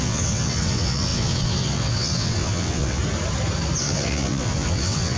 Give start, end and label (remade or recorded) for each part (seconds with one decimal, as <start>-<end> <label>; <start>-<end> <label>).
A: 0.0-3.0 remade; 3.0-3.8 recorded; 3.8-5.2 remade